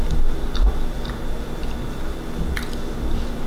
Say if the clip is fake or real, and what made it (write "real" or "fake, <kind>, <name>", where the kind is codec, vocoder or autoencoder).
real